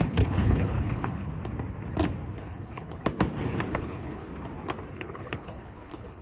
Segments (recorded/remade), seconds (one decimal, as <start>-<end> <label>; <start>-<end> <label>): 0.0-1.3 remade; 1.3-2.4 recorded; 2.4-3.0 remade; 3.0-3.7 recorded; 3.7-4.3 remade; 4.3-4.9 recorded; 4.9-6.2 remade